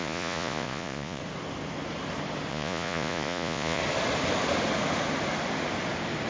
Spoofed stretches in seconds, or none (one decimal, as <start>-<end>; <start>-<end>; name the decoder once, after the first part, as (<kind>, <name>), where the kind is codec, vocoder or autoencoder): 0.0-1.2 (vocoder, Vocos); 2.5-3.8